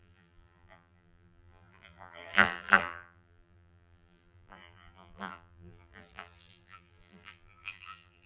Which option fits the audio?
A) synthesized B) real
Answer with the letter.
A